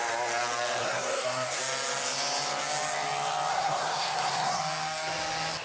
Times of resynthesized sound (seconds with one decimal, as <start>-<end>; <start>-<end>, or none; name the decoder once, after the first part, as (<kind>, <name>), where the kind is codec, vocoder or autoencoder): 0.8-1.6 (codec, SNAC); 3.5-4.6